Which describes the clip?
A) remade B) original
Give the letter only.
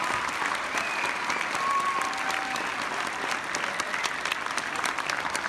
B